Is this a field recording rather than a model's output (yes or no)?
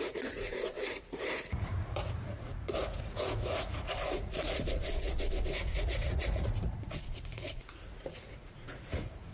no